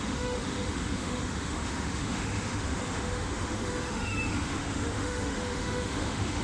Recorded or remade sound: remade